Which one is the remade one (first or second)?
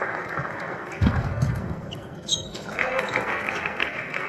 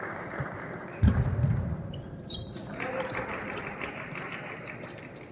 first